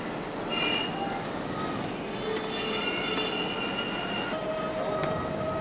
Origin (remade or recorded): recorded